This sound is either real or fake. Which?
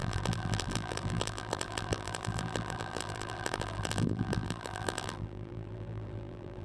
fake